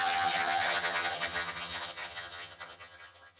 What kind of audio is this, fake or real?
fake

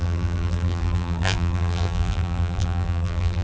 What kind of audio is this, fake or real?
fake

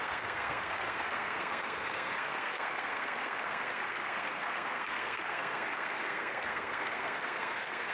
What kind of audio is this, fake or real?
fake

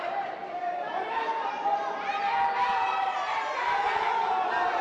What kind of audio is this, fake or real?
fake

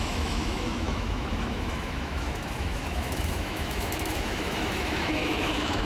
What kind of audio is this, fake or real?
fake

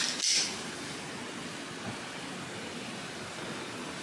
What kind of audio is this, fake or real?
real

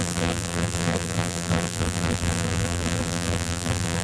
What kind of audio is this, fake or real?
fake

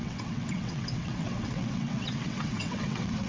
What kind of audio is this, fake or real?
fake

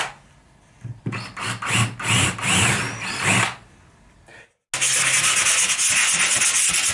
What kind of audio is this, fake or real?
real